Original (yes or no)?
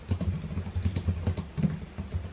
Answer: yes